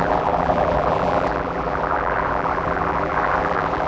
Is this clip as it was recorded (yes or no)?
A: no